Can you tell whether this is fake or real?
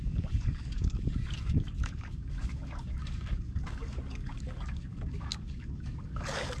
fake